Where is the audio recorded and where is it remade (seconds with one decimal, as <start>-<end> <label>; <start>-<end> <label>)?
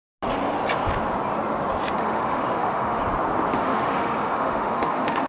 0.0-2.0 recorded; 2.0-3.0 remade; 3.0-3.6 recorded; 3.6-5.3 remade